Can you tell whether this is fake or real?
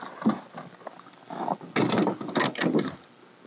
real